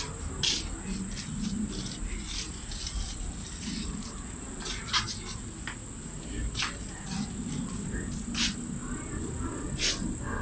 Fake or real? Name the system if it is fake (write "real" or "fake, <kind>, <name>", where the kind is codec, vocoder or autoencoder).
real